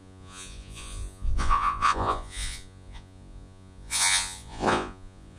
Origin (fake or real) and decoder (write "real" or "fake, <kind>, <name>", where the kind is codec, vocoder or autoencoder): fake, vocoder, Vocos